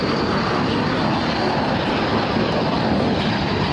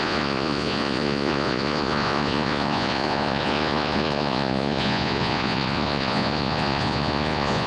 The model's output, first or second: second